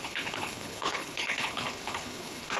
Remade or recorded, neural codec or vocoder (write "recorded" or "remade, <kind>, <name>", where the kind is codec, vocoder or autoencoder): remade, codec, HILCodec